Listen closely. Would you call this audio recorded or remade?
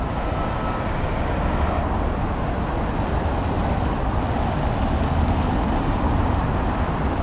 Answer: recorded